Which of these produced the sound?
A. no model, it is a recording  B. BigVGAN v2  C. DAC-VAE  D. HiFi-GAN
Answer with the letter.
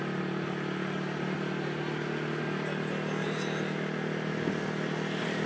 A